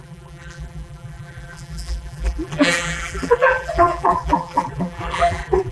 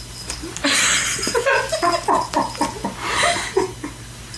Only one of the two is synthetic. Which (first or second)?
first